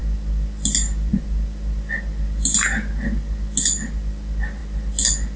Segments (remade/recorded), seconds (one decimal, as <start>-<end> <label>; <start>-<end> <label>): 0.0-5.4 recorded